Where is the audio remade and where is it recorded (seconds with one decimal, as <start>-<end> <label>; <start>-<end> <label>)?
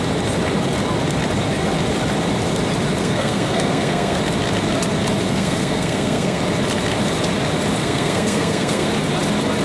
0.0-3.0 recorded; 3.0-4.2 remade; 4.2-5.3 recorded; 5.3-6.4 remade; 6.4-7.8 recorded; 7.8-8.9 remade; 8.9-9.6 recorded